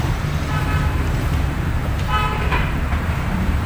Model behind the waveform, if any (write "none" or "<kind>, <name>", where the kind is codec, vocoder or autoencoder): vocoder, BigVGAN v2